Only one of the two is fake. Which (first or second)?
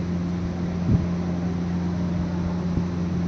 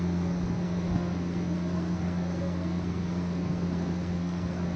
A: second